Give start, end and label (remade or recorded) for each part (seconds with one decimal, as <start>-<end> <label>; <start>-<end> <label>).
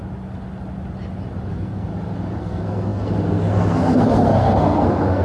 0.0-1.5 recorded; 1.5-1.9 remade; 1.9-2.4 recorded; 2.4-5.2 remade